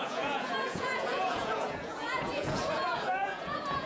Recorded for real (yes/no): no